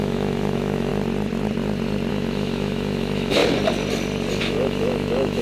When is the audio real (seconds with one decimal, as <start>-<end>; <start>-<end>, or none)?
0.9-2.1; 3.4-4.4